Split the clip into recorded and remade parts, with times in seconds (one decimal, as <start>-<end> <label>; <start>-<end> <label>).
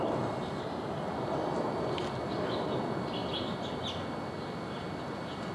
0.0-5.5 recorded